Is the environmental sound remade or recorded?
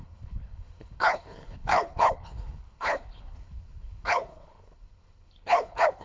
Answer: remade